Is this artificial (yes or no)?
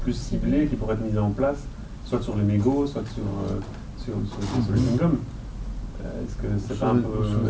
no